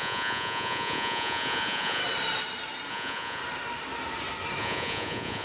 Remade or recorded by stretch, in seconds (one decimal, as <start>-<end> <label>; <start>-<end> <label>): 0.0-2.0 remade; 2.0-2.9 recorded; 2.9-3.4 remade; 3.4-4.6 recorded; 4.6-5.4 remade